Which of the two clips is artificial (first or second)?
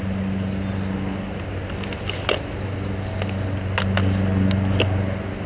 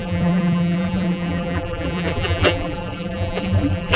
second